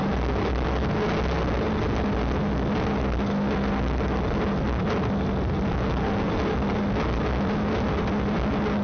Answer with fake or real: real